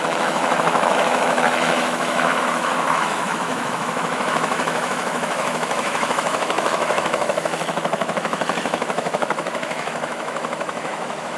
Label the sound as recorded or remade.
remade